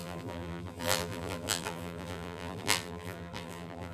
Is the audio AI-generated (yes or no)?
yes